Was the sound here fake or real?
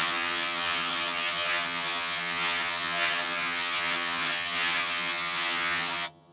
fake